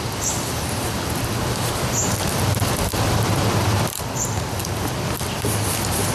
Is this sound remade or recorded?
remade